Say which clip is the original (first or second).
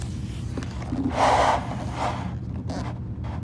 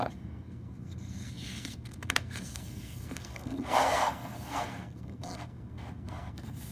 first